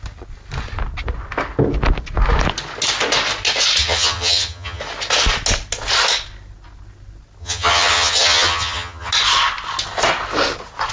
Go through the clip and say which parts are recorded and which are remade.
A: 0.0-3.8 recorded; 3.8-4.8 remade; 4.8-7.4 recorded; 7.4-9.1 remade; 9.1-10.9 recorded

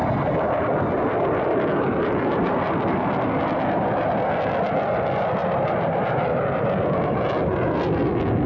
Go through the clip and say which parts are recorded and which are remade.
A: 0.0-8.5 recorded

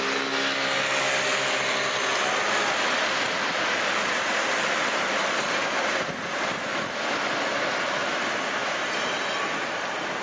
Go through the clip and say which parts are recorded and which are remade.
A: 0.0-4.0 recorded; 4.0-4.9 remade; 4.9-10.2 recorded

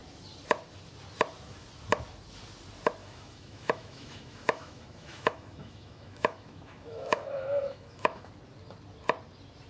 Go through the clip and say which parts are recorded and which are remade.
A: 0.0-3.0 recorded; 3.0-8.3 remade; 8.3-9.7 recorded

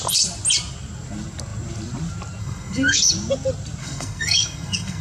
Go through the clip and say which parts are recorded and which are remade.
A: 0.0-2.4 recorded; 2.4-3.1 remade; 3.1-3.8 recorded; 3.8-5.0 remade